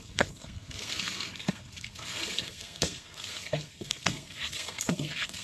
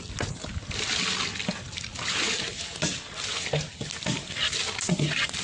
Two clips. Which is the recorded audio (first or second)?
second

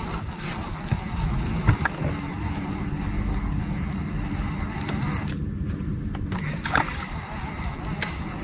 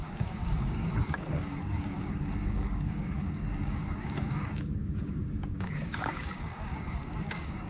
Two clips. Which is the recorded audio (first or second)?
first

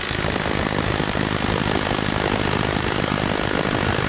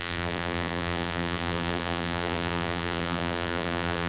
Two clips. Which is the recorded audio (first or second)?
first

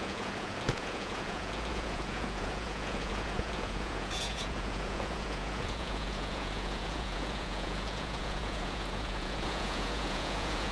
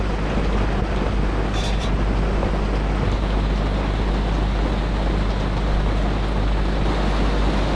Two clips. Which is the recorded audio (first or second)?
second